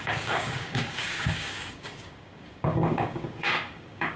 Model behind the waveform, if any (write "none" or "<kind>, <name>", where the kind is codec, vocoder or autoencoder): codec, DAC